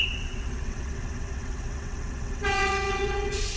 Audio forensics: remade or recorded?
remade